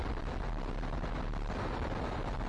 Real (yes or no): yes